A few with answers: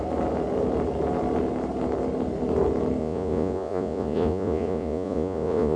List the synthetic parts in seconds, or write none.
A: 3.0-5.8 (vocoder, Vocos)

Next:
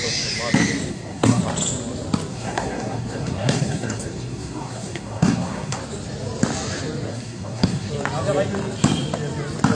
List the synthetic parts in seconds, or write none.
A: 0.9-1.4 (codec, SNAC); 2.3-5.8; 7.1-7.9

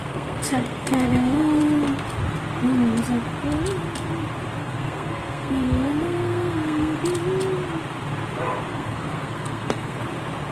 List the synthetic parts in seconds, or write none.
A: 0.0-1.6 (codec, SNAC); 4.6-7.0; 8.7-10.0

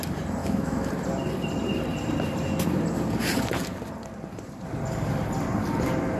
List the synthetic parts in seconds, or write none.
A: 0.4-0.9 (autoencoder, DAC-VAE)